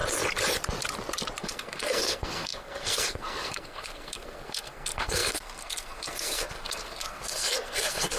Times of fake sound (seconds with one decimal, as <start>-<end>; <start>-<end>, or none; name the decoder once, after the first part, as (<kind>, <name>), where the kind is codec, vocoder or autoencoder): 1.4-8.2 (codec, SNAC)